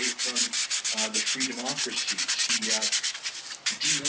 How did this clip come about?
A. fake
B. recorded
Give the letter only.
B